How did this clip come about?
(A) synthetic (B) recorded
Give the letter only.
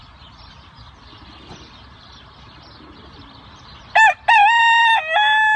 B